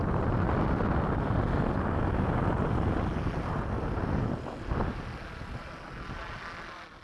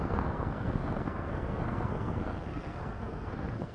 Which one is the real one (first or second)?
first